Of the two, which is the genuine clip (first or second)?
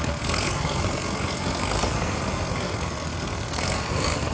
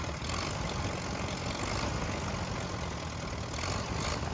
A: second